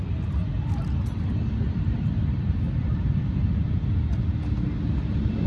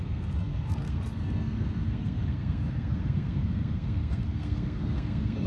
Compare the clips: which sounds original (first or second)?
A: first